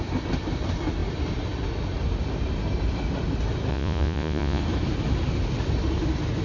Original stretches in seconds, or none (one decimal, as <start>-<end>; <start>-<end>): 0.0-3.7; 4.6-6.4